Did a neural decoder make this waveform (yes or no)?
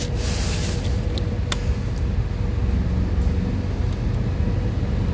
no